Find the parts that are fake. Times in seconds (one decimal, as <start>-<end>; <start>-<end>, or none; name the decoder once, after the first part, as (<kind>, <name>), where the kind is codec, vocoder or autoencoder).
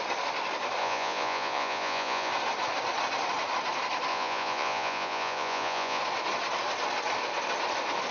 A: 0.8-2.3 (vocoder, Vocos); 4.1-6.0